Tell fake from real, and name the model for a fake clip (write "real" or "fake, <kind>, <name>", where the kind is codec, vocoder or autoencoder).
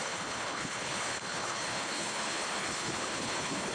fake, codec, HILCodec